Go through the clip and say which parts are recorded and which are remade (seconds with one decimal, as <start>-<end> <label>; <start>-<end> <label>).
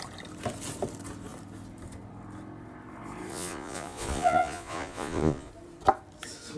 0.0-3.3 recorded; 3.3-5.5 remade; 5.5-6.6 recorded